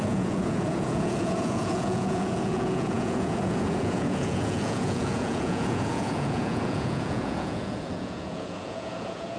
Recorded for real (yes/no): no